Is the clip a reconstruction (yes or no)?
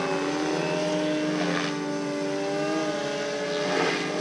no